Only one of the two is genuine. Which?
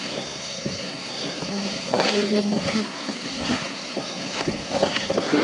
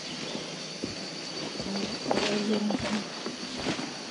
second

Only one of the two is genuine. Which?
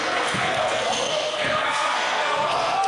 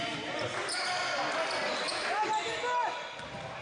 second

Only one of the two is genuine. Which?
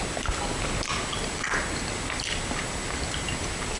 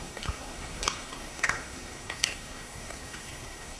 first